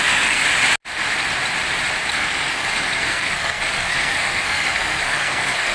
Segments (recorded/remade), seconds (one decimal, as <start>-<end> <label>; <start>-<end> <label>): 0.0-0.4 remade; 0.4-2.1 recorded; 2.1-5.7 remade